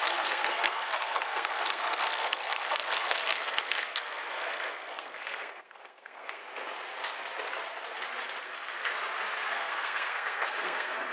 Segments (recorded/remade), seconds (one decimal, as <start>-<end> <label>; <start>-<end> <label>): 0.0-6.4 remade; 6.4-8.4 recorded; 8.4-8.9 remade; 8.9-9.5 recorded; 9.5-11.1 remade